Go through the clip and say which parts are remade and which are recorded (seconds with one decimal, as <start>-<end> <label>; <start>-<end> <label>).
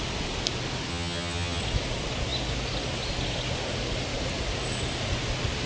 0.0-0.9 recorded; 0.9-1.6 remade; 1.6-5.7 recorded